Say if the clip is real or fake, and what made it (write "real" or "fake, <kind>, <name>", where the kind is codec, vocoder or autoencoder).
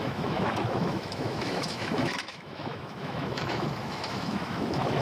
fake, autoencoder, DAC-VAE